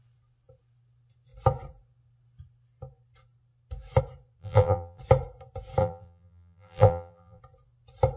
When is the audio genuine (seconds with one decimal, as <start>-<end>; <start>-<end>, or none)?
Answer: 0.0-4.4; 5.0-5.8; 7.4-8.2